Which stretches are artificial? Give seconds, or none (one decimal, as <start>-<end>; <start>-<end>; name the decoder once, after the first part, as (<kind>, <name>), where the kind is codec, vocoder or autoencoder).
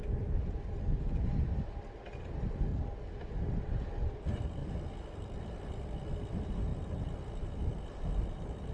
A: 2.7-3.3 (vocoder, BigVGAN v2); 4.6-5.4; 6.7-7.8